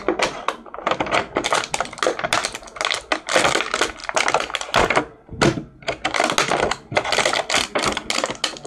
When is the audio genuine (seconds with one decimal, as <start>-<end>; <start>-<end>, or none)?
0.0-8.7